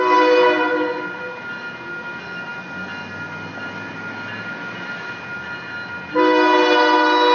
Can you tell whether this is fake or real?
real